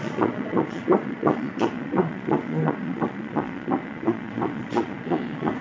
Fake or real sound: fake